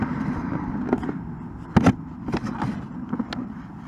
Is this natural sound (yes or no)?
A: yes